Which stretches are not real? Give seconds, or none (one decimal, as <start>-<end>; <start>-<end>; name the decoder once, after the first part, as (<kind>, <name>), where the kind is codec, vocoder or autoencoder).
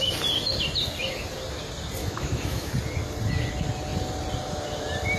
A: 2.0-2.7 (autoencoder, DAC-VAE)